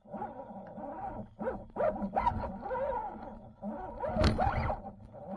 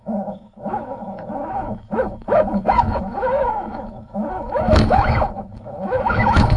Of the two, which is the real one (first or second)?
first